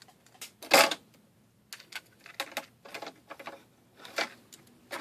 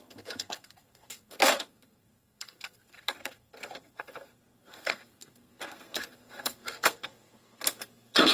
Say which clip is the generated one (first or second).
second